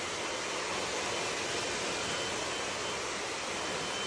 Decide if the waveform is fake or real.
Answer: real